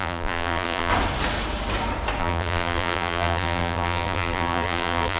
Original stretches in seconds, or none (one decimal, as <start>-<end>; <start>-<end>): 0.9-2.2